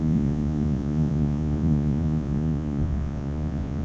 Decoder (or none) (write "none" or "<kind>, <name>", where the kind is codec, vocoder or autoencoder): vocoder, Vocos